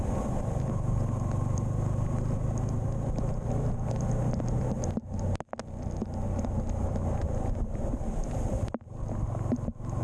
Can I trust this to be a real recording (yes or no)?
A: yes